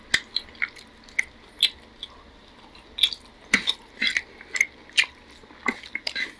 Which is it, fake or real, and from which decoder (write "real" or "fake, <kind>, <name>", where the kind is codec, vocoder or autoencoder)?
real